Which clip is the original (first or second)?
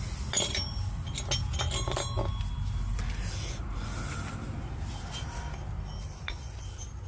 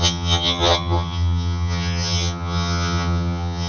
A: first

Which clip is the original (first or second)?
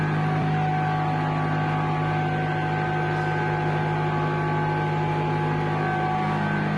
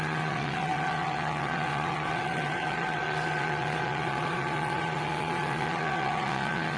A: first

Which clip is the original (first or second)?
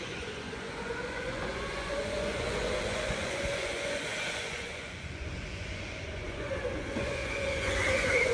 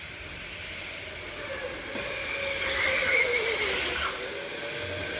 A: second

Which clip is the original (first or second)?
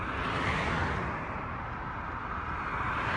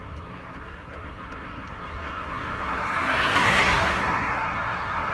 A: first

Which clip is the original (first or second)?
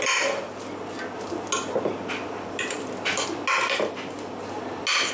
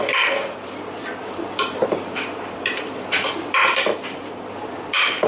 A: first